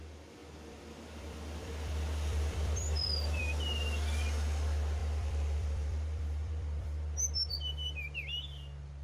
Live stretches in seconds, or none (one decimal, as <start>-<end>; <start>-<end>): 0.0-0.4; 3.4-5.0; 7.5-9.0